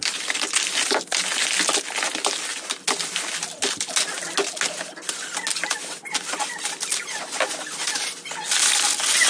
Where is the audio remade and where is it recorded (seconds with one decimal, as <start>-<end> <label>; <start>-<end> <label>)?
0.0-9.3 recorded

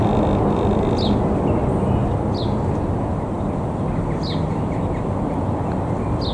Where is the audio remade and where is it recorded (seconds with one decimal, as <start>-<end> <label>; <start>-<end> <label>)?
0.0-6.3 recorded

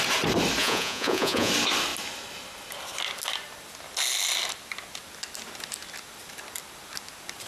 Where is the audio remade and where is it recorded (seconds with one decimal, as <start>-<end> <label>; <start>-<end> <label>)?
0.0-0.6 recorded; 0.6-1.5 remade; 1.5-7.5 recorded

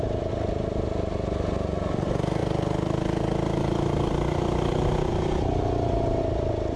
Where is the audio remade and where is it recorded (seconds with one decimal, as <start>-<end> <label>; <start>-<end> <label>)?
0.0-6.8 recorded

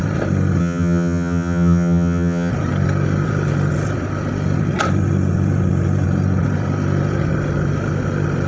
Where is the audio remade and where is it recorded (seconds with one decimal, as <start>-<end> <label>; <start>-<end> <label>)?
0.0-0.6 recorded; 0.6-2.5 remade; 2.5-8.5 recorded

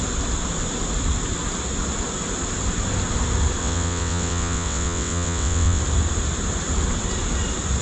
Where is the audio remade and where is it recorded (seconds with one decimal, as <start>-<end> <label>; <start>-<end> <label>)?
0.0-3.6 recorded; 3.6-5.8 remade; 5.8-7.8 recorded

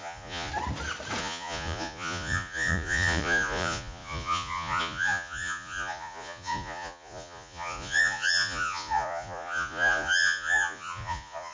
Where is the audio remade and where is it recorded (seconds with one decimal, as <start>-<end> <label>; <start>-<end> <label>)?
0.0-0.5 remade; 0.5-1.2 recorded; 1.2-11.5 remade

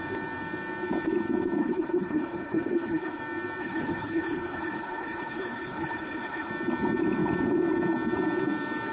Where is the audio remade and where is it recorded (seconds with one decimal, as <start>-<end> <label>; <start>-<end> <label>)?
0.0-1.6 recorded; 1.6-3.2 remade; 3.2-3.6 recorded; 3.6-6.5 remade; 6.5-8.9 recorded